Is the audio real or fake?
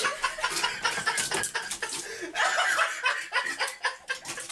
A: real